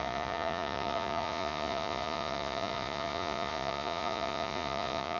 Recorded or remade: remade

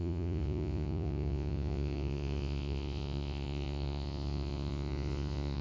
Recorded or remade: remade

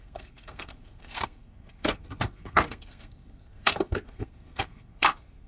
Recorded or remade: remade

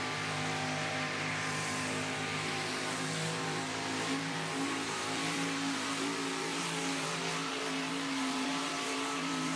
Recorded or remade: remade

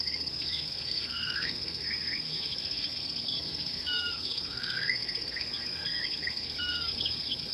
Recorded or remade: remade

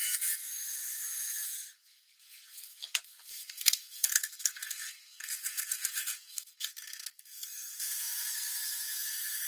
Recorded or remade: remade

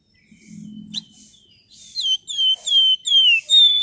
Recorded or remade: recorded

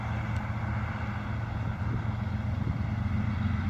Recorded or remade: recorded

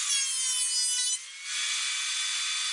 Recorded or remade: recorded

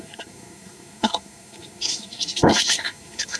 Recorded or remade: remade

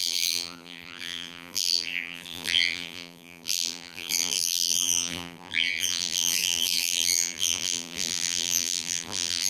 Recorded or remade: remade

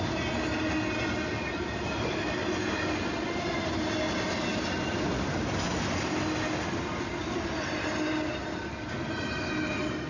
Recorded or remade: recorded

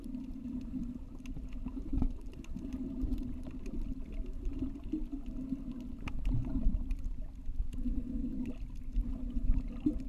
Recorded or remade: recorded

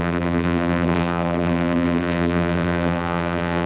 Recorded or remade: remade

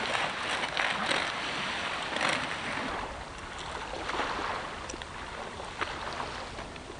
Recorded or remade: recorded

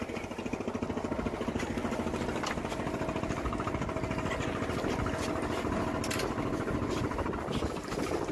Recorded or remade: recorded